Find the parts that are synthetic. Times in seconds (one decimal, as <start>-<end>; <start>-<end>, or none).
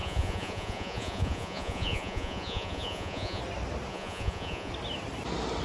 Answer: 0.0-3.4; 3.9-4.7